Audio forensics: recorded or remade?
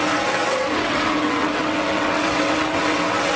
remade